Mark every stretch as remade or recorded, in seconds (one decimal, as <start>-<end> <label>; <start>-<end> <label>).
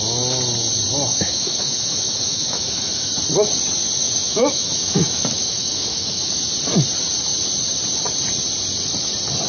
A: 0.0-1.1 recorded; 1.1-3.1 remade; 3.1-4.0 recorded; 4.0-6.3 remade; 6.3-9.5 recorded